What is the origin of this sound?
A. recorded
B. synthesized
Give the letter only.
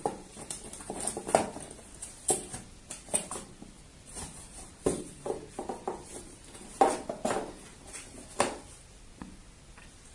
A